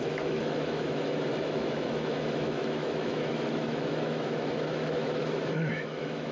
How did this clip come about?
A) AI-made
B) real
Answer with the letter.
A